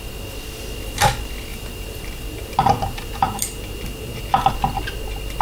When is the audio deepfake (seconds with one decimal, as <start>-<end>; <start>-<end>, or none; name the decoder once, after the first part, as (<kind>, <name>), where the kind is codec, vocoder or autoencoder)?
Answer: 1.5-4.5 (vocoder, BigVGAN v2)